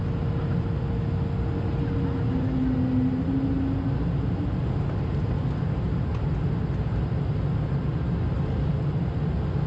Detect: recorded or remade recorded